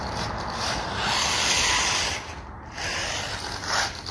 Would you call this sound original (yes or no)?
yes